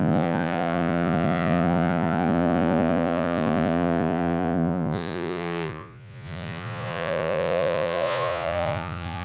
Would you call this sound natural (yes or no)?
no